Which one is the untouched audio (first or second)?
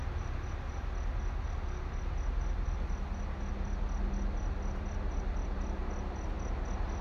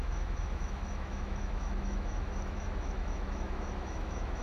first